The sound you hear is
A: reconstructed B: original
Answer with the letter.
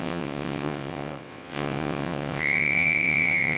A